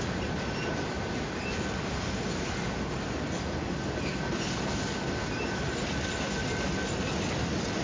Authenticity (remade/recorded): recorded